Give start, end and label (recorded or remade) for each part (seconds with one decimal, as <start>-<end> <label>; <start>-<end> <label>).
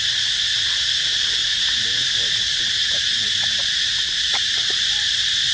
0.0-1.4 recorded; 1.4-4.7 remade; 4.7-5.5 recorded